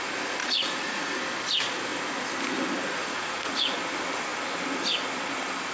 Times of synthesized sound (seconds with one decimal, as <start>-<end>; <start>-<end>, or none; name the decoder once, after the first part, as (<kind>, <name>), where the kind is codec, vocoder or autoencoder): 0.4-1.2 (vocoder, Vocos); 3.0-3.7

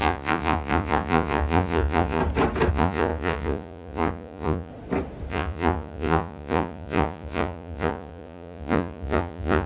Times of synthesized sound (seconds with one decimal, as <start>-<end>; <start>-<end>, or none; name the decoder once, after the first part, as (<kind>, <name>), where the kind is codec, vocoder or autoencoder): 0.0-2.2 (vocoder, Vocos); 2.7-4.7; 5.3-9.7

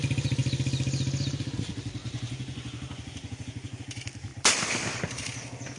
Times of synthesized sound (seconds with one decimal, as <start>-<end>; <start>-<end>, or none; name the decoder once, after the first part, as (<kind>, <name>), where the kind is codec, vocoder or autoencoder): 2.0-3.8 (vocoder, Vocos)

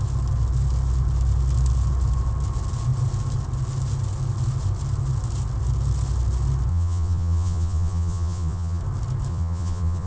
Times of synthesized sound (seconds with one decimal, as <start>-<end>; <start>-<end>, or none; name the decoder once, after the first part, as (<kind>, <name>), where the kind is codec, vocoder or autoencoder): 6.7-8.8 (vocoder, Vocos); 9.3-10.1